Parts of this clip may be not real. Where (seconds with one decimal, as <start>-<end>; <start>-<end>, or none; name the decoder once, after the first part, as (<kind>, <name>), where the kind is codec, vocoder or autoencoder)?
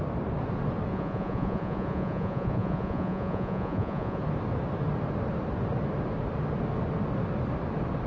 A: 0.9-4.2 (vocoder, Vocos)